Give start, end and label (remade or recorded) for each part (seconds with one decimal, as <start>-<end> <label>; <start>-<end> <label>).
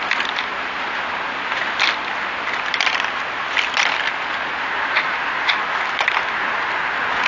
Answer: 0.0-7.3 recorded